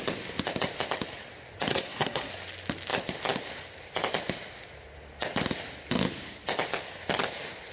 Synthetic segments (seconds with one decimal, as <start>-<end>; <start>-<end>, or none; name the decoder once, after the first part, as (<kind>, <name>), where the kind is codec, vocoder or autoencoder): 1.7-2.3 (codec, SNAC)